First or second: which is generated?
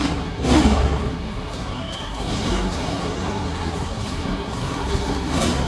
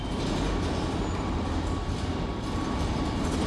first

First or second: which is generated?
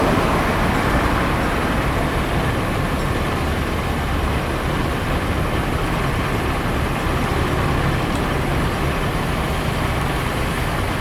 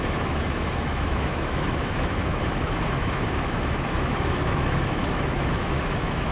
second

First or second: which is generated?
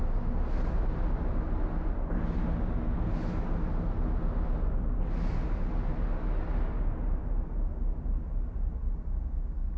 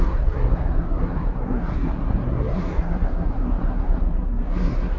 second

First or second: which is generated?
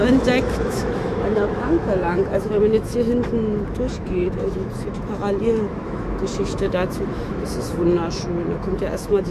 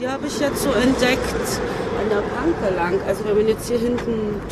first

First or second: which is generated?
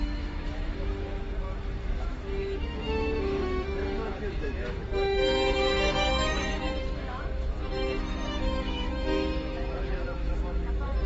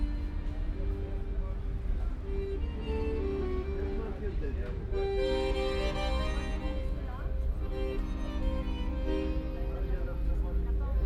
first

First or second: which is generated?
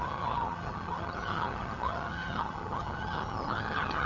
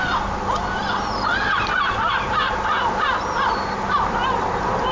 first